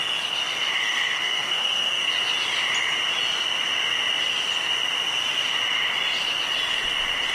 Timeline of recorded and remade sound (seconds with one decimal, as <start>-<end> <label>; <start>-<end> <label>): 0.0-0.8 recorded; 0.8-2.1 remade; 2.1-7.3 recorded